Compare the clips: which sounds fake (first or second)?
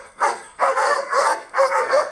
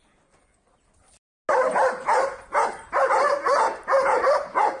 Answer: first